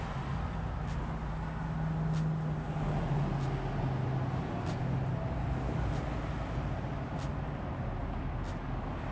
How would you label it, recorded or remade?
recorded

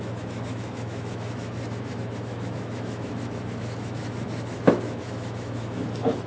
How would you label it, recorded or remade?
remade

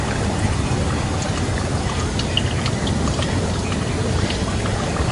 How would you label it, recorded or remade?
recorded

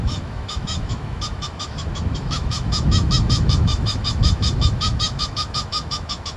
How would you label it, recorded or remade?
remade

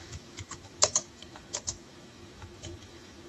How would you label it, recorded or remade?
remade